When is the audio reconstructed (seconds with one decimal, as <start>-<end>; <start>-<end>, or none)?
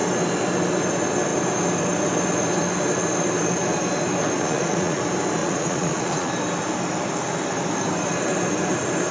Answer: 4.4-5.0; 5.4-6.3